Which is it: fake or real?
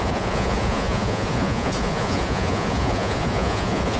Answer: fake